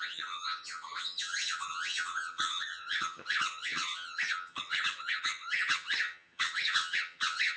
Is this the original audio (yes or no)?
no